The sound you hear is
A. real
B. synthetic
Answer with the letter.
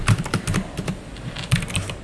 A